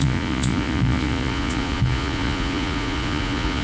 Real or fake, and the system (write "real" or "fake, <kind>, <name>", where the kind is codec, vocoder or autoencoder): fake, vocoder, Vocos